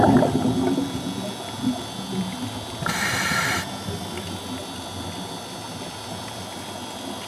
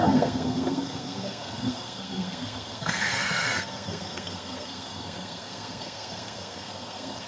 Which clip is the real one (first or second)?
first